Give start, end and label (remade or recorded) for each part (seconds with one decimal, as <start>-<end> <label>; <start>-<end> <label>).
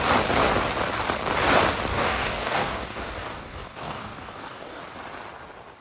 0.0-1.9 recorded; 1.9-4.8 remade; 4.8-5.8 recorded